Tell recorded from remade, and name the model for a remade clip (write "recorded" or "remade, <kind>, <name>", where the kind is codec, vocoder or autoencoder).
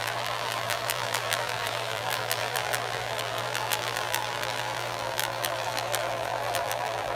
remade, vocoder, BigVGAN v2